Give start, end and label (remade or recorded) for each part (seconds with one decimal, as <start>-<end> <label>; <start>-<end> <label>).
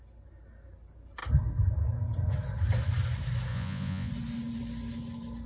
0.0-3.5 recorded; 3.5-4.1 remade; 4.1-5.5 recorded